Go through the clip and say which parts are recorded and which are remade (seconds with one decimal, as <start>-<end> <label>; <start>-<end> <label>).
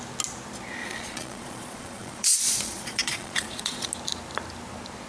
0.0-0.8 recorded; 0.8-3.9 remade; 3.9-5.1 recorded